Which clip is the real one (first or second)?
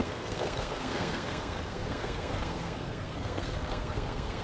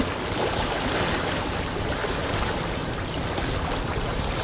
second